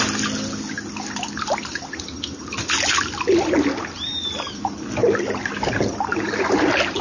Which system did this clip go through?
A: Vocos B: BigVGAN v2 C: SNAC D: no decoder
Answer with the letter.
D